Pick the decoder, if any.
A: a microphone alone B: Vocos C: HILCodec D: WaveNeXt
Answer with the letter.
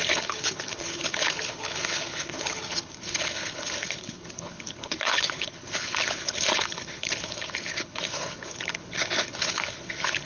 C